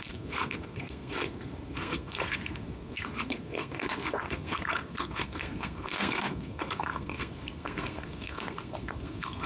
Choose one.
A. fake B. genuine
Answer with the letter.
A